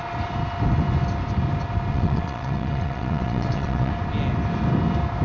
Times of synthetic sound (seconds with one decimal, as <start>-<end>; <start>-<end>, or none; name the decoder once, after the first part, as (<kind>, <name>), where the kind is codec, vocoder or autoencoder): 1.9-3.9 (vocoder, WaveNeXt)

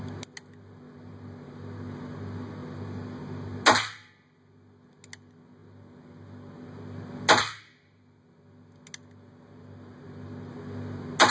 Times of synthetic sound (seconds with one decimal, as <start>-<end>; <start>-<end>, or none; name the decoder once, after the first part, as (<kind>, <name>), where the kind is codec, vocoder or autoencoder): none